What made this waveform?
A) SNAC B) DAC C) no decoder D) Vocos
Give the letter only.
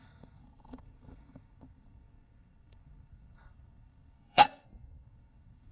A